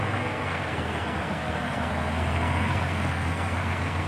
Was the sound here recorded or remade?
remade